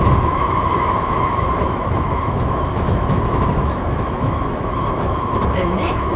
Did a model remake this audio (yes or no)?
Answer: yes